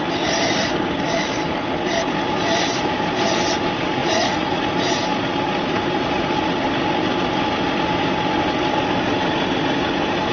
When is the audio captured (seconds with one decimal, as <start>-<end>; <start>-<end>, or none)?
0.0-4.0; 4.6-10.3